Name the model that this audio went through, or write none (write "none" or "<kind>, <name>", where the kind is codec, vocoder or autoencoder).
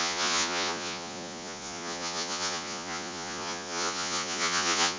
vocoder, Vocos